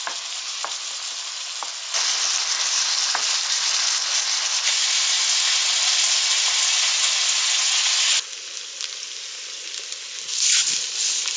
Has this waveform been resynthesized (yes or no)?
no